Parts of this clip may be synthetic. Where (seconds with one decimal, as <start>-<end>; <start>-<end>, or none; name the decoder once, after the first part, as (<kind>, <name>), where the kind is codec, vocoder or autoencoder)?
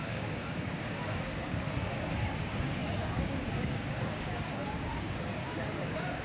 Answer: 0.0-6.2 (codec, DAC)